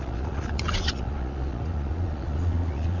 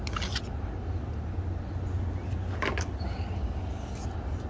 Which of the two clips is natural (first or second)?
second